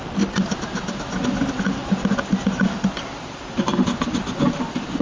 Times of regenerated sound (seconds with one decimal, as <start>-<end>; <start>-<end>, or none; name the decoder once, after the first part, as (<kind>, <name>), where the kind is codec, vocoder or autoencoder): none